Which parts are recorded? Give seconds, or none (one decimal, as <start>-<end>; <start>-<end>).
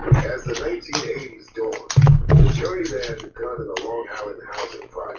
0.0-5.2